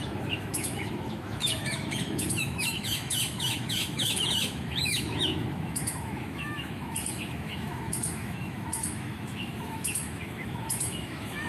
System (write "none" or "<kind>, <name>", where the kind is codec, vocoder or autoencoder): autoencoder, DAC-VAE